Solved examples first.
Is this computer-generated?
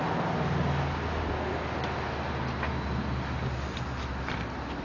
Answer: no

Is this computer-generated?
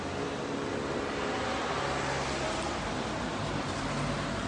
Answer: no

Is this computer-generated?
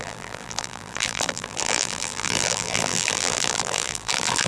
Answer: yes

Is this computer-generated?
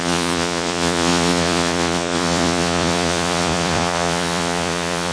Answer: yes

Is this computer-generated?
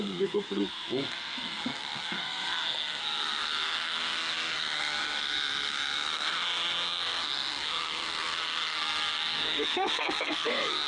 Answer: yes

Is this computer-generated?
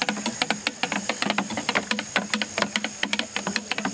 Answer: no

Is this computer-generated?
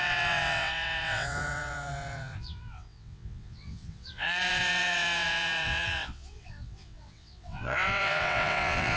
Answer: yes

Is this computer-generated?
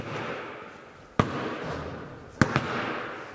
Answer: no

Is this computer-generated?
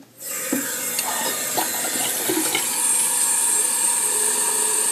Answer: no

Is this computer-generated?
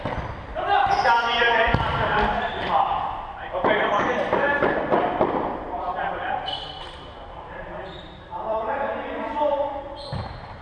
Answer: yes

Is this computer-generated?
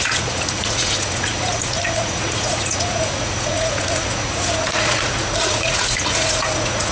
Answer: yes